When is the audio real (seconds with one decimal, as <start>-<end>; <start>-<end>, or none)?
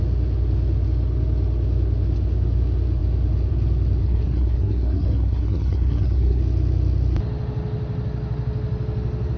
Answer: 0.0-4.0; 6.4-9.4